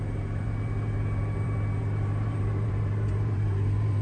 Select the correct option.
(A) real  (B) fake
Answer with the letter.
B